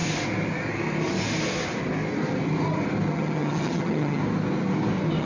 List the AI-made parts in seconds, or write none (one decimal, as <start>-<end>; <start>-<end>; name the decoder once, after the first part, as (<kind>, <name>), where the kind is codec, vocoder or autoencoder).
3.1-4.2 (vocoder, HiFi-GAN)